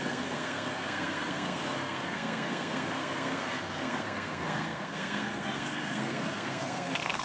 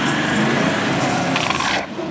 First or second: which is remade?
first